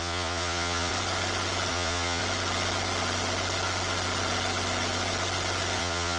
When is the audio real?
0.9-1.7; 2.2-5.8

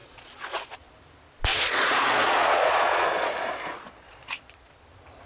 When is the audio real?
0.9-1.5; 4.7-5.3

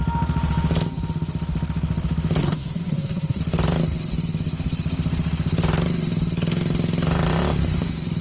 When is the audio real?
0.0-2.4; 3.4-8.2

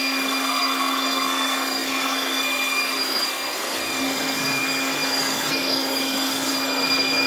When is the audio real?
none

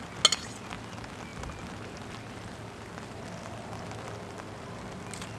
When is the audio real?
0.0-5.4

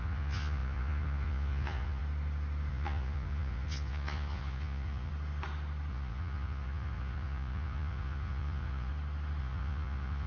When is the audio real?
2.0-2.7; 5.1-5.9; 8.9-9.4